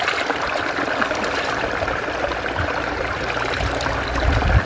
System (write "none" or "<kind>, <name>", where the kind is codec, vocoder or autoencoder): none